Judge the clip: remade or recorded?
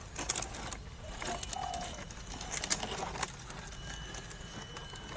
recorded